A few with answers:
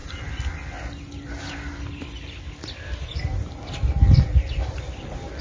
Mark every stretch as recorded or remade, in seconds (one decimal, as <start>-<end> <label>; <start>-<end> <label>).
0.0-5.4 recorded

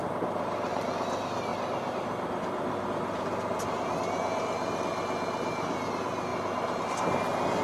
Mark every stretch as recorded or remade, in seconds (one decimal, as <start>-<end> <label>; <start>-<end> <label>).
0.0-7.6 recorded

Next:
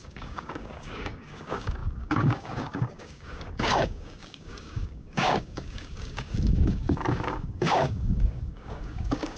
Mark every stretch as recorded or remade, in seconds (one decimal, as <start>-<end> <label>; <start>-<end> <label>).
0.0-9.4 remade